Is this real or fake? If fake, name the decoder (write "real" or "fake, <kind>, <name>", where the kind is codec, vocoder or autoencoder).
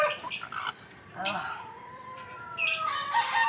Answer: real